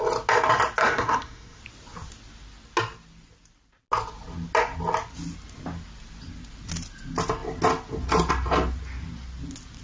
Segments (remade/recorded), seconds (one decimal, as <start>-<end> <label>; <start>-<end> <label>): 0.0-0.8 recorded; 0.8-1.6 remade; 1.6-9.8 recorded